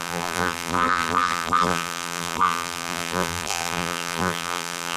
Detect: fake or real fake